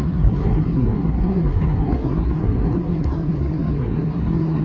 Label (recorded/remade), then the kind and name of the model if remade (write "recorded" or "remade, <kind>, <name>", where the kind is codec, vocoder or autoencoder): remade, codec, SNAC